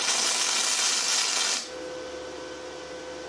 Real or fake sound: real